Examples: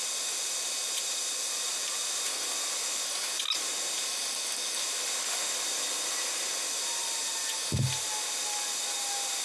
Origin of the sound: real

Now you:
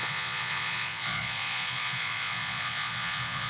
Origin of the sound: fake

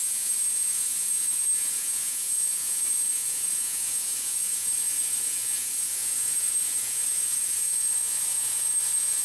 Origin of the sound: fake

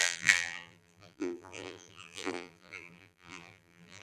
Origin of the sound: fake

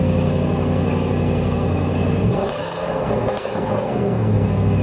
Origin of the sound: fake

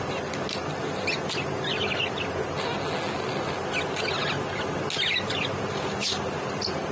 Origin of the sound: real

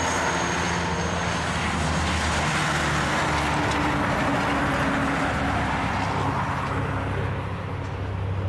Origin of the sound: real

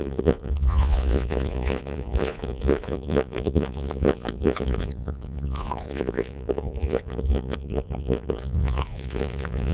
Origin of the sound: fake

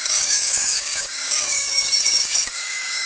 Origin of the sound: fake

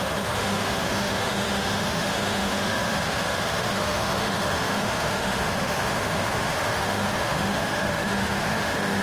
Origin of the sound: fake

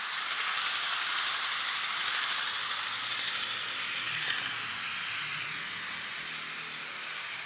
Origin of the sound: real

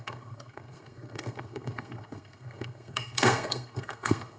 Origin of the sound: fake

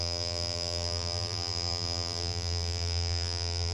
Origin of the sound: fake